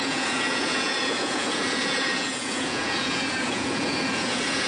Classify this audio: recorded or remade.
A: remade